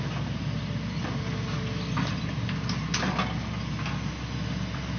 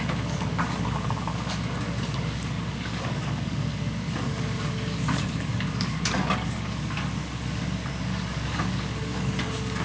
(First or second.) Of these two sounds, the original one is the first